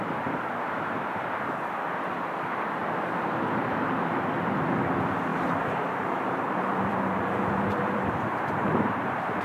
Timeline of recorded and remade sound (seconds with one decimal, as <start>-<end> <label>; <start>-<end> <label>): 0.0-2.8 recorded; 2.8-4.2 remade; 4.2-5.3 recorded; 5.3-9.4 remade